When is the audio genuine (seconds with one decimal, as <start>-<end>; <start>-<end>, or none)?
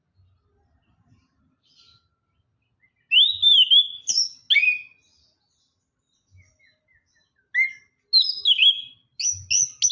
0.0-9.9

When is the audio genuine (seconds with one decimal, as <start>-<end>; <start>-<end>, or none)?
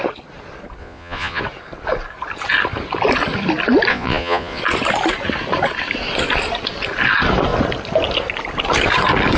0.0-0.8; 1.4-3.9; 4.6-9.4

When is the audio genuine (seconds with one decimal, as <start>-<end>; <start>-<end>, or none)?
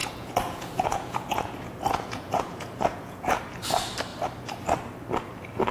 3.4-5.7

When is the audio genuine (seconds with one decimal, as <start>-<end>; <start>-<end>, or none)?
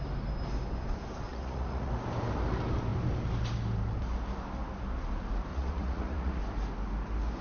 0.0-1.3; 1.9-5.5; 6.4-7.4